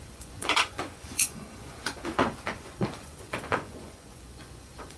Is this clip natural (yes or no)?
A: no